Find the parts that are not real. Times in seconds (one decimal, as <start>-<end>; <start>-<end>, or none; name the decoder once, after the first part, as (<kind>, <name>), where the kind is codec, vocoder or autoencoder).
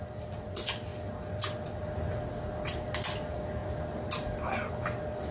none